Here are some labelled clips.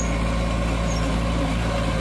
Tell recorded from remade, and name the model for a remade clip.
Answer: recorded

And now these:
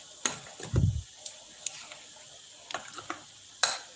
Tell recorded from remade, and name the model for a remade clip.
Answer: recorded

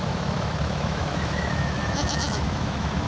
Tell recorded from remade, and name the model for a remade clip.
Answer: remade, autoencoder, DAC-VAE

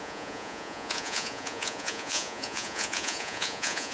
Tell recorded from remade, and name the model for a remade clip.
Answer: remade, vocoder, Vocos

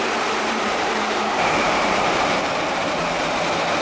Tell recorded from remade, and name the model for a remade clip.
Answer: remade, vocoder, BigVGAN v2